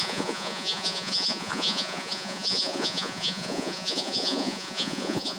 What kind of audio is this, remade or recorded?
remade